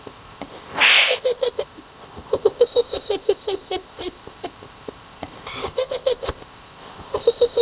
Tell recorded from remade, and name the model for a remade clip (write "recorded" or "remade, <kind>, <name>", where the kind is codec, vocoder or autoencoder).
remade, codec, ZipCodec